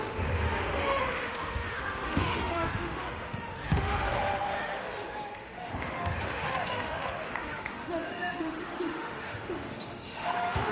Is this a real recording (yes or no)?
no